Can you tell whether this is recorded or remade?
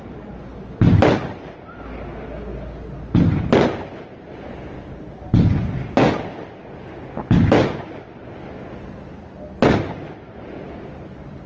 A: recorded